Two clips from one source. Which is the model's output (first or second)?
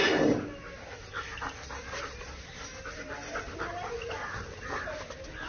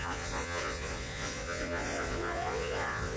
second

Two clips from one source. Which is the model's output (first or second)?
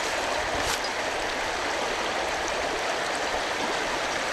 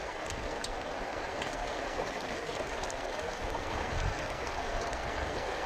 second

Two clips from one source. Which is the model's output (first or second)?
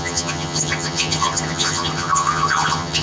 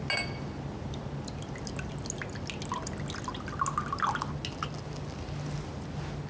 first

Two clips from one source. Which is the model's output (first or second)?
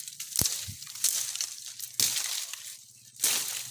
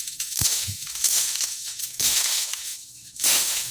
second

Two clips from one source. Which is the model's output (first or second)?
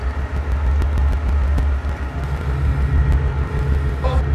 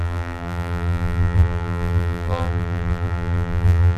second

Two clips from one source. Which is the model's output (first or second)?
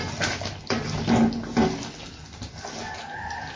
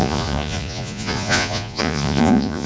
second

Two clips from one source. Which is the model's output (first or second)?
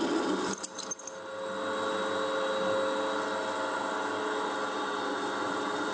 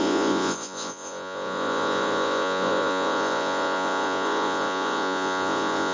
second